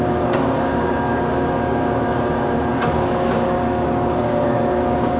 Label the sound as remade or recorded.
remade